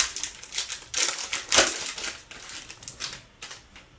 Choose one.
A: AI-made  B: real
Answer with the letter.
B